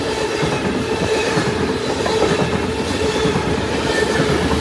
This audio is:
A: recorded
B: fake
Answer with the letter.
A